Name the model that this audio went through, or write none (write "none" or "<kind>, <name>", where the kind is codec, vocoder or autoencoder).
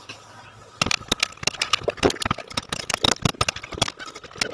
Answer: none